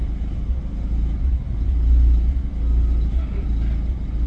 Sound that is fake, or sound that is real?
real